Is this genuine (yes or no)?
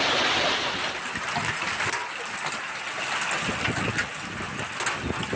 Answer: yes